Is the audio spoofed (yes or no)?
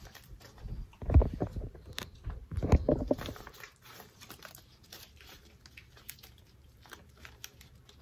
yes